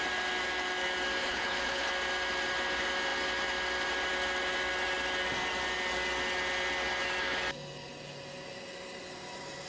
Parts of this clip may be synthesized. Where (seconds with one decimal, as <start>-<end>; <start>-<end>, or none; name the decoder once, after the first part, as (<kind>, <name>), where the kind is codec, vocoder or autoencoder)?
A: 1.2-1.9 (codec, HILCodec)